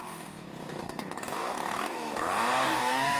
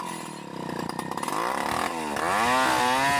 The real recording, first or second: second